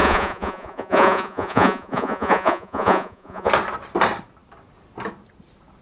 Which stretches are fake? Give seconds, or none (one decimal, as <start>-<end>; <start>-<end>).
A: 0.0-3.5